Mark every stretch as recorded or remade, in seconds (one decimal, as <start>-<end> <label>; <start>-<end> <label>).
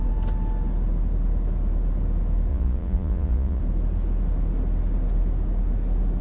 0.0-2.5 recorded; 2.5-3.6 remade; 3.6-6.2 recorded